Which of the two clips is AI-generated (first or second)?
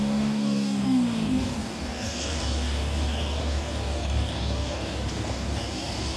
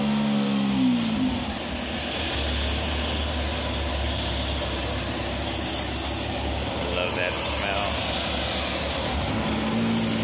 first